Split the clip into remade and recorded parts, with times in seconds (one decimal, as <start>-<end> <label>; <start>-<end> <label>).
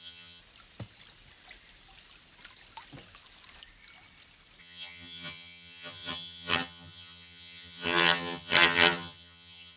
0.0-0.4 remade; 0.4-4.6 recorded; 4.6-9.8 remade